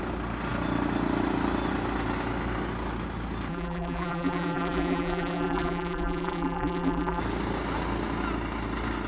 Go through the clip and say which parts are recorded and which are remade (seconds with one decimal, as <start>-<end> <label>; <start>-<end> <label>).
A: 0.0-3.5 recorded; 3.5-7.2 remade; 7.2-9.1 recorded